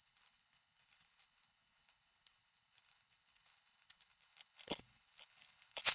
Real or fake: fake